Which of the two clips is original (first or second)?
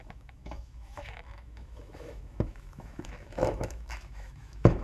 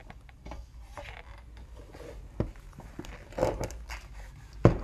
second